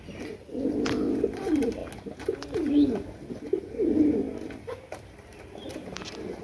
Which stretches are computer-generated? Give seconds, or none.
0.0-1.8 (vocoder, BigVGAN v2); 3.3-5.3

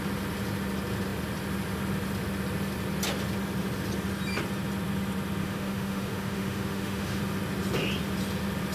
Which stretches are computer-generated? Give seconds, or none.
5.4-7.2 (autoencoder, DAC-VAE)